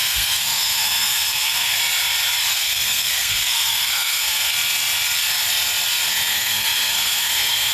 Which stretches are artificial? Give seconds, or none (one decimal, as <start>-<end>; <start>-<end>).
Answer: 0.0-1.8; 2.5-4.5; 6.3-7.7